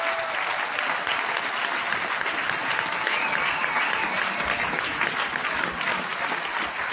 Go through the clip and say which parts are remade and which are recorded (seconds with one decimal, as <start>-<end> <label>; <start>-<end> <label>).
0.0-6.9 recorded